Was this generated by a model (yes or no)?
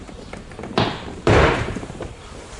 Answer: yes